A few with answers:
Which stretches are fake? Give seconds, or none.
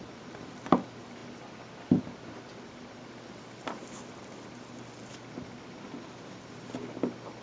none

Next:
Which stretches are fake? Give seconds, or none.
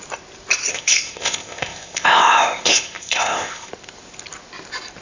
0.7-3.7 (codec, ZipCodec)